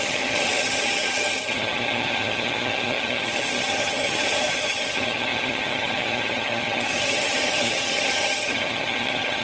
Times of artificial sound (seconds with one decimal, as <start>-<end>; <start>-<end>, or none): 0.0-9.4